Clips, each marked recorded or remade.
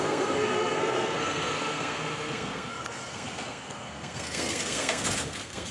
remade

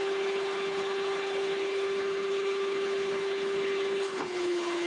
remade